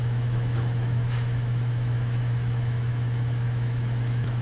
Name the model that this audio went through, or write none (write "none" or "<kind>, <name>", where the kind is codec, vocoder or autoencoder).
autoencoder, DAC-VAE